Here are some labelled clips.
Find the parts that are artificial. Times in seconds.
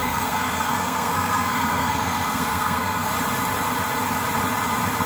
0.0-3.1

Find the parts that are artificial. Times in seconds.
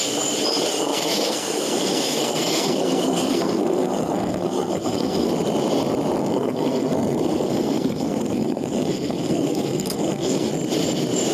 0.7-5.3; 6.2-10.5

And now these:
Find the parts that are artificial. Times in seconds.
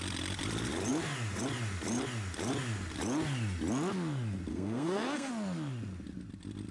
4.5-5.3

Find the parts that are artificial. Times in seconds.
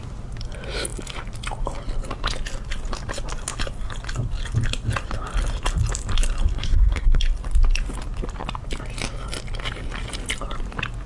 6.5-7.2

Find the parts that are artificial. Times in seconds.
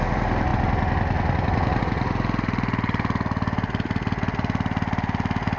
none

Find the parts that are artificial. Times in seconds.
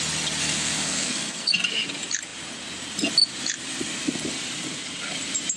0.4-1.5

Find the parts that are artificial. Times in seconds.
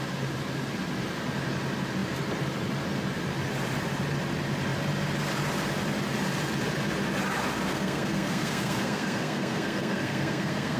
7.7-10.8